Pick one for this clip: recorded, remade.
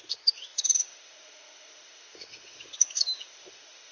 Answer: remade